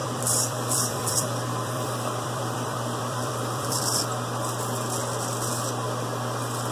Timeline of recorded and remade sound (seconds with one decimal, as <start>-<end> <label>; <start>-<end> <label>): 0.0-4.0 remade; 4.0-6.7 recorded